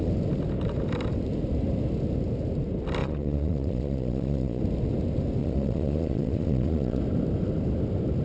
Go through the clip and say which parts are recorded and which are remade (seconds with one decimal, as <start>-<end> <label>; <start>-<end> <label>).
0.0-3.0 recorded; 3.0-4.6 remade; 4.6-5.4 recorded; 5.4-7.0 remade; 7.0-8.2 recorded